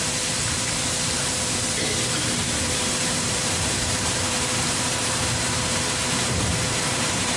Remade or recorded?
remade